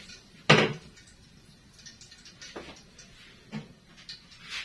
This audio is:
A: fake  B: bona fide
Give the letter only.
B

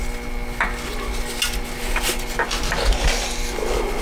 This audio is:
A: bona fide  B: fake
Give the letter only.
A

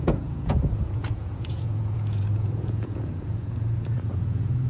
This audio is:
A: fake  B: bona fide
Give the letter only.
A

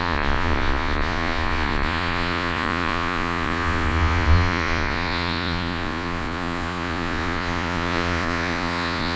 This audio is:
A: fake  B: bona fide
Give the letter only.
A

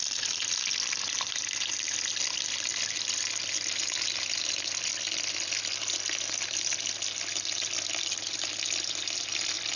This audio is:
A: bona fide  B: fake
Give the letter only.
A